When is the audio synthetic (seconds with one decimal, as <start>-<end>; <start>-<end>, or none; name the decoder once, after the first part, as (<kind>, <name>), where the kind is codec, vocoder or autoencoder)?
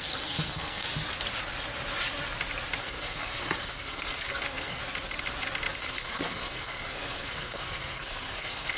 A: 0.0-0.9 (codec, SNAC); 2.8-4.8; 5.8-8.8